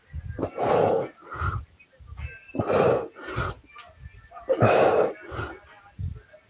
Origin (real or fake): real